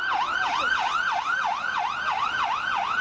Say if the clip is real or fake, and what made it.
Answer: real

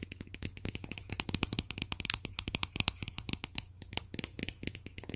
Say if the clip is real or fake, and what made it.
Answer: fake, codec, DAC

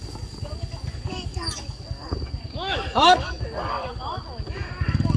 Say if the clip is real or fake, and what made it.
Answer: fake, codec, DAC